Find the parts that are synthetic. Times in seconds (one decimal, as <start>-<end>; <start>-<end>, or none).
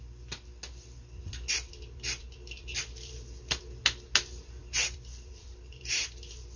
1.2-3.6; 4.6-6.0